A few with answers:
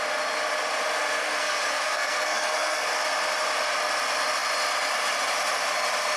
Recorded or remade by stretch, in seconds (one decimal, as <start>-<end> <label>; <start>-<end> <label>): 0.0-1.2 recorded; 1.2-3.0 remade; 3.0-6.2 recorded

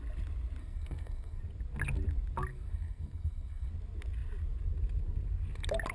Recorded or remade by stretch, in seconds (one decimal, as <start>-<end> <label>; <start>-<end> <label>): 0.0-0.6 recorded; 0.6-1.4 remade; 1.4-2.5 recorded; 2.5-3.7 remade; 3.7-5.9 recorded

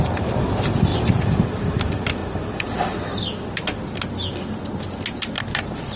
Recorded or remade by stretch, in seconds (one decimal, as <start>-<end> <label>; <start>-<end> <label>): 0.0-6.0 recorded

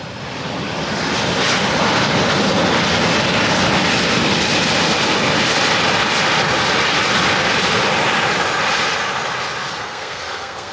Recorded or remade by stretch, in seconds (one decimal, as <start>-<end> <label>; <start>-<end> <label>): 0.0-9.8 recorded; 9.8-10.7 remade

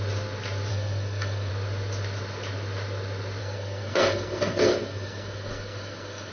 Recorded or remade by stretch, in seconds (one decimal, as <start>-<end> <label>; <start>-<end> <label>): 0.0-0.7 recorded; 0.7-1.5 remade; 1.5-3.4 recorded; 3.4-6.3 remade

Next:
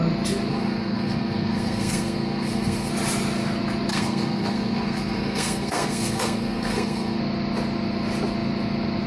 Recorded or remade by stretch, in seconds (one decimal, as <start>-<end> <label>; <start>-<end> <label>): 0.0-0.5 recorded; 0.5-2.9 remade; 2.9-3.9 recorded; 3.9-7.2 remade; 7.2-9.1 recorded

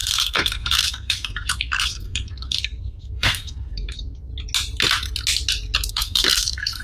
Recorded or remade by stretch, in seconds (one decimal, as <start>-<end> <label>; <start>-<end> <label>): 0.0-4.3 remade; 4.3-5.9 recorded; 5.9-6.8 remade

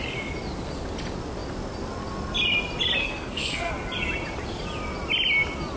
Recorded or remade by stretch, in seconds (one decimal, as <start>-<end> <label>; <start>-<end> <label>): 0.0-3.0 recorded; 3.0-3.7 remade; 3.7-5.8 recorded